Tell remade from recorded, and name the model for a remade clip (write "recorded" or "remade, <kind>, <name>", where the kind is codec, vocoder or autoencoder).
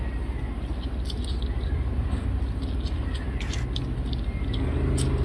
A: recorded